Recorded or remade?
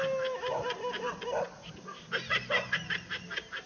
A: recorded